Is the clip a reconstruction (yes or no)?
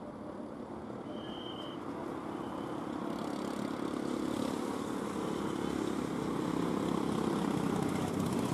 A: no